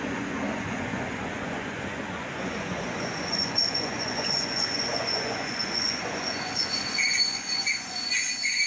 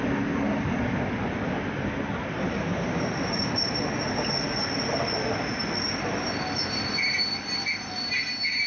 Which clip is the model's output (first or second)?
first